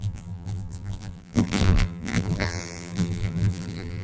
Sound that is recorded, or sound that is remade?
remade